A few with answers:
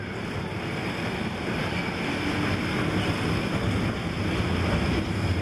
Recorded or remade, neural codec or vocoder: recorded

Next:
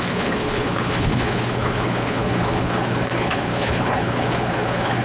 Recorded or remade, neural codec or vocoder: remade, codec, HILCodec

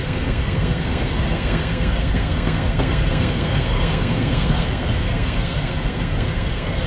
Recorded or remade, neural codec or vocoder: remade, codec, SNAC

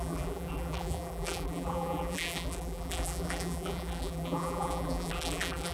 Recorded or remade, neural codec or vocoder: remade, vocoder, BigVGAN v2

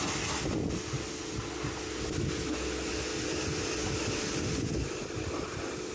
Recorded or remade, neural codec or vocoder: recorded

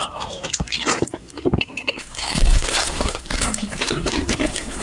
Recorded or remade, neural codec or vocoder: remade, codec, SNAC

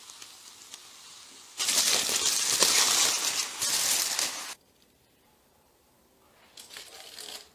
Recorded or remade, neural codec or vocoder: recorded